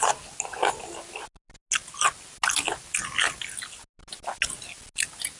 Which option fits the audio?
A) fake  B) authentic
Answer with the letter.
B